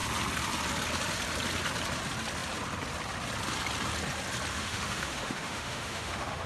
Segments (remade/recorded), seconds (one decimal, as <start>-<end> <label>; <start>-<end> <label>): 0.0-4.5 recorded; 4.5-6.5 remade